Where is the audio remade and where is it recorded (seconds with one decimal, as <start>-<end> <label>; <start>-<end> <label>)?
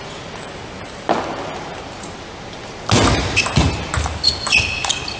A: 0.0-5.2 recorded